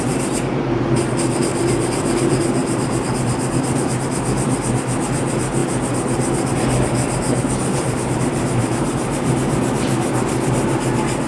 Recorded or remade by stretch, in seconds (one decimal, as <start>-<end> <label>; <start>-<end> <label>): 0.0-2.6 recorded; 2.6-4.0 remade; 4.0-7.6 recorded; 7.6-9.6 remade; 9.6-11.3 recorded